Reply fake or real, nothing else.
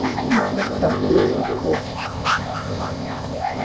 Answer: fake